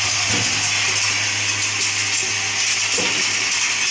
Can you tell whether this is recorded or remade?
recorded